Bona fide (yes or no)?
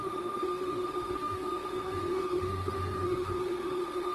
no